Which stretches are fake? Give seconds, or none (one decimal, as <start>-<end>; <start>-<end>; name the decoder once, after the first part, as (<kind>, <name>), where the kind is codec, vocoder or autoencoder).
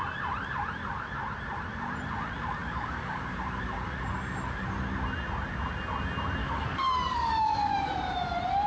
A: 2.6-3.2 (codec, DAC); 6.4-7.9